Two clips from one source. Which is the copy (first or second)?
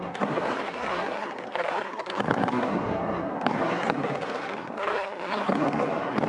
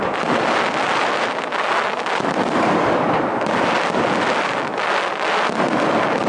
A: first